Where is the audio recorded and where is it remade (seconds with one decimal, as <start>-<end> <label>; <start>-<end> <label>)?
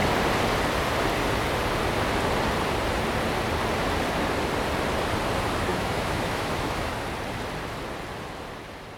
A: 0.0-5.7 recorded; 5.7-6.9 remade; 6.9-9.0 recorded